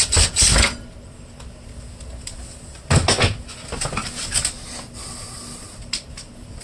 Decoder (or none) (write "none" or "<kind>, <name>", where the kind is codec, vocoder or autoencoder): none